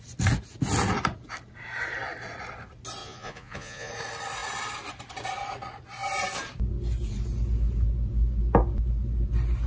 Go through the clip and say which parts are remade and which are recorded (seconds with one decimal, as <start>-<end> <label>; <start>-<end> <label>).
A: 0.0-3.0 recorded; 3.0-3.9 remade; 3.9-9.7 recorded